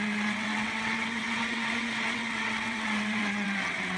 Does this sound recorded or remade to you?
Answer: remade